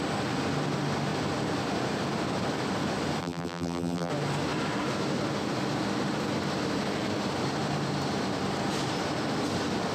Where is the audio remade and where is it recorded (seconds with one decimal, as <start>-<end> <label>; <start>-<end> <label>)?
0.0-3.2 recorded; 3.2-4.1 remade; 4.1-9.9 recorded